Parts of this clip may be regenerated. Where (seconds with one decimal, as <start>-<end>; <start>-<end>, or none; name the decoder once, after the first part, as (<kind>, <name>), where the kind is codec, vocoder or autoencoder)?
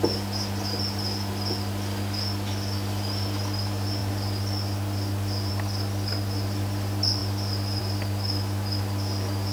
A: 4.0-5.5 (vocoder, BigVGAN v2); 7.2-7.8